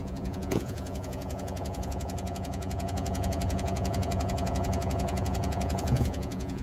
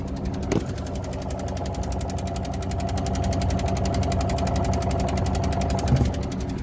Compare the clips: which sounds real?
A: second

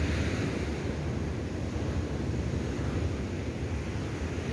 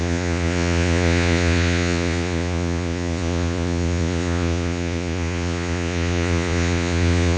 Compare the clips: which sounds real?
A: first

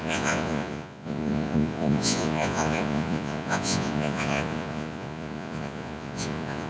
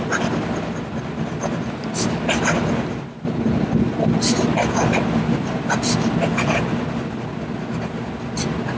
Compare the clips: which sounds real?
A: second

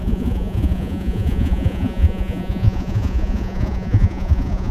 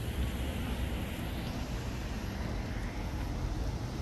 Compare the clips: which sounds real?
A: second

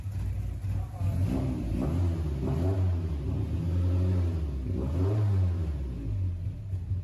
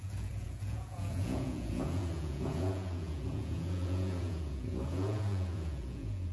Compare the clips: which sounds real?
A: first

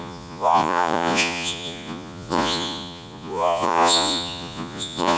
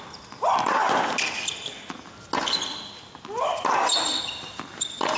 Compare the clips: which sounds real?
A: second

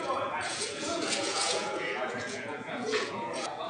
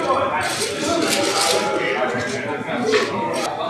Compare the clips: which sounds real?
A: second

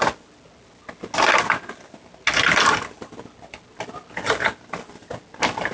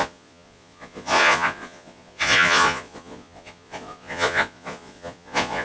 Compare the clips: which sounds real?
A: first